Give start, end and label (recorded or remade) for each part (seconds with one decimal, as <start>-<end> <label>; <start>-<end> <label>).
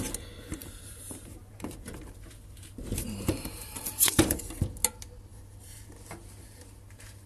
0.0-0.6 recorded; 0.6-4.4 remade; 4.4-5.3 recorded; 5.3-7.3 remade